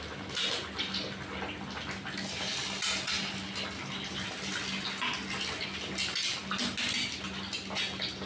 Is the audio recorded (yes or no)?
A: yes